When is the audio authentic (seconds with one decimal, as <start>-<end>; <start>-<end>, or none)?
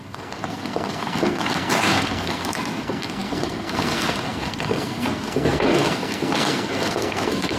none